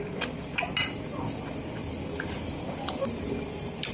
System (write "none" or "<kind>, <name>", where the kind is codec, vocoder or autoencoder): none